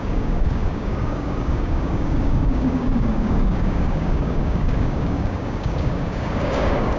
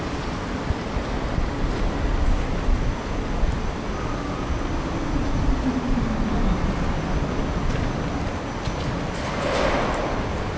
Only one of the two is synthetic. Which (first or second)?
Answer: first